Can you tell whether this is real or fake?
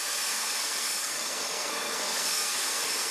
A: fake